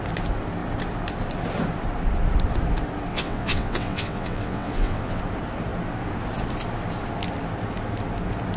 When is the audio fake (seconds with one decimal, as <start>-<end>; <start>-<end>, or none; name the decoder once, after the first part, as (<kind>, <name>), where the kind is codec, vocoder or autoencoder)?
3.1-5.2 (vocoder, WaveNeXt)